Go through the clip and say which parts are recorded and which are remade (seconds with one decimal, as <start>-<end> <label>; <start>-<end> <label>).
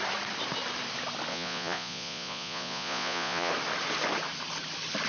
0.0-1.3 recorded; 1.3-3.5 remade; 3.5-5.1 recorded